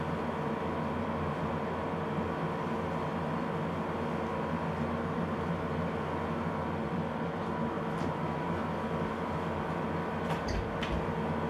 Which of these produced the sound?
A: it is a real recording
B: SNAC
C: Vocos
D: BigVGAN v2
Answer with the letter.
D